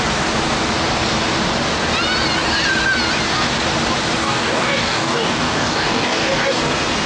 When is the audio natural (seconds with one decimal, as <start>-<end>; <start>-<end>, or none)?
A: 0.0-4.2; 6.6-7.1